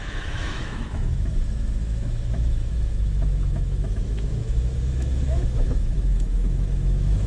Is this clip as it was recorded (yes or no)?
no